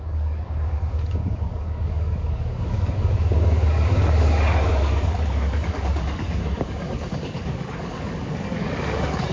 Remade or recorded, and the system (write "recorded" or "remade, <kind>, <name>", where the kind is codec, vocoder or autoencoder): remade, codec, DAC